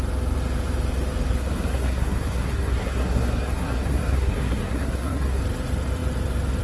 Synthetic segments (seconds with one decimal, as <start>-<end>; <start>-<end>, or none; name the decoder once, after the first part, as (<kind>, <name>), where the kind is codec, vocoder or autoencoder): 1.4-5.4 (codec, SNAC)